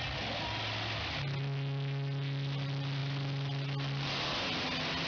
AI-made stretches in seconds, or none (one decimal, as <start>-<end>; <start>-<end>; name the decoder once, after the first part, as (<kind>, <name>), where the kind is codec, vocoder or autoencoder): none